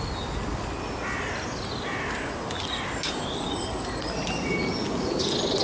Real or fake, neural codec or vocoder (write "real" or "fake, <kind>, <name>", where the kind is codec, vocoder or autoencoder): real